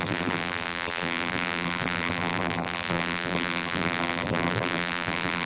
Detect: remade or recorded remade